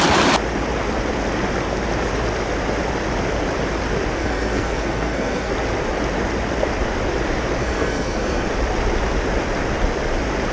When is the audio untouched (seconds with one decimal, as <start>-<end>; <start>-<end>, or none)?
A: 0.0-4.2; 5.5-7.6; 8.5-10.5